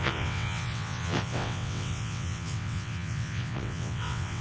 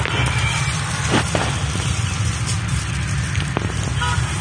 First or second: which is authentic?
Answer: second